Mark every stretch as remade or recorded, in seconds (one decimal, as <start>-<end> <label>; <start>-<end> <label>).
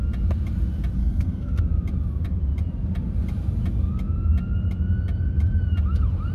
0.0-1.0 recorded; 1.0-1.6 remade; 1.6-6.3 recorded